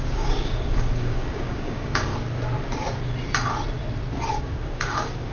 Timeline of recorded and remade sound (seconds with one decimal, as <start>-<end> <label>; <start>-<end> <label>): 0.0-2.1 remade; 2.1-4.3 recorded; 4.3-5.3 remade